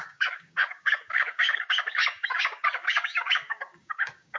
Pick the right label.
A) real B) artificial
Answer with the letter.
B